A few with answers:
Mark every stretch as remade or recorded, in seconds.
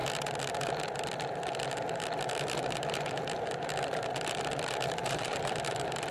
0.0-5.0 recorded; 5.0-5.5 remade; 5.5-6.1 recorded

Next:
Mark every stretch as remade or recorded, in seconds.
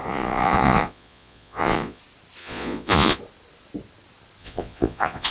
0.0-2.0 remade; 2.0-2.4 recorded; 2.4-3.2 remade; 3.2-4.4 recorded; 4.4-5.3 remade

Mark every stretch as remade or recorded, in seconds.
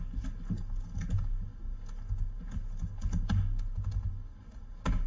0.0-5.1 recorded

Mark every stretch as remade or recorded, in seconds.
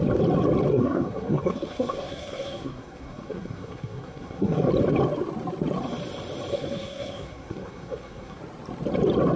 0.0-0.7 recorded; 0.7-4.7 remade; 4.7-6.5 recorded; 6.5-8.4 remade; 8.4-9.4 recorded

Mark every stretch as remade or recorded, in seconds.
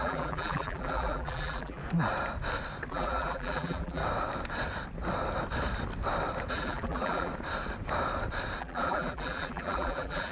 0.0-1.8 remade; 1.8-2.9 recorded; 2.9-4.0 remade; 4.0-6.5 recorded; 6.5-7.3 remade; 7.3-8.6 recorded; 8.6-10.3 remade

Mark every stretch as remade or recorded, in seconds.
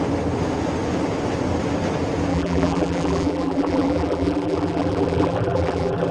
0.0-2.3 recorded; 2.3-6.1 remade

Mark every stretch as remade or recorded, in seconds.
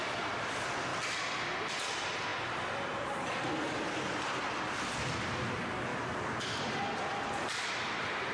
0.0-8.3 recorded